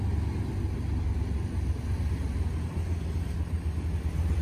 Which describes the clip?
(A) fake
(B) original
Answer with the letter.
B